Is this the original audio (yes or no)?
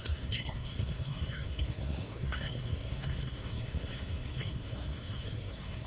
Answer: no